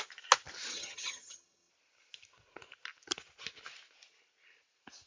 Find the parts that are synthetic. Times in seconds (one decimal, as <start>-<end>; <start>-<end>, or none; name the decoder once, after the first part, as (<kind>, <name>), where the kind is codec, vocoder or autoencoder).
0.7-1.7 (vocoder, HiFi-GAN)